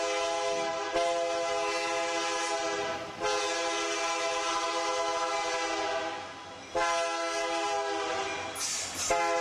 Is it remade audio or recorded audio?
recorded